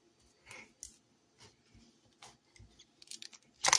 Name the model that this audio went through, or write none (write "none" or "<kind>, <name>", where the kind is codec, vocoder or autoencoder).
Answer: none